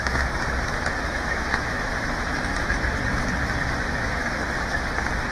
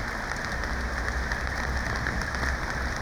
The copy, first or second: first